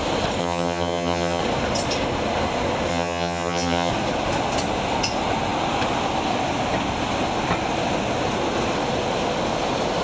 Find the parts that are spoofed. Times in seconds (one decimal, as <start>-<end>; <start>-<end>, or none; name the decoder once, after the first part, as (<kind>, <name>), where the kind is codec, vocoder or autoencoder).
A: 0.4-1.4 (vocoder, HiFi-GAN); 2.9-3.9